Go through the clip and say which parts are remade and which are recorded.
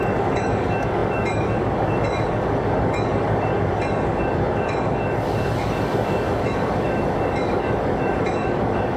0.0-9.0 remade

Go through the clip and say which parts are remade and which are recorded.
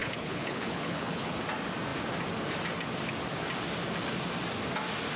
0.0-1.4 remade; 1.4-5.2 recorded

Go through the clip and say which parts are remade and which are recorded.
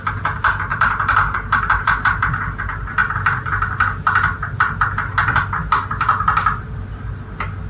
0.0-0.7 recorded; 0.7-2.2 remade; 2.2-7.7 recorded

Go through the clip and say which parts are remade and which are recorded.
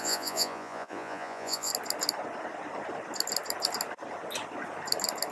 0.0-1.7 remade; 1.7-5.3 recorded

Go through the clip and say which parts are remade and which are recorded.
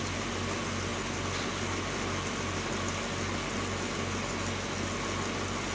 0.0-5.7 recorded